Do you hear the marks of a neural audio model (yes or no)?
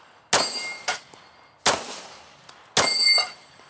no